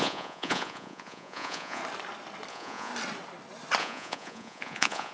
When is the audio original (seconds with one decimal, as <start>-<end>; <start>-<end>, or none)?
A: 1.8-2.5; 2.9-3.8